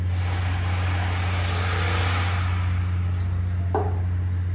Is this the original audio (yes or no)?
yes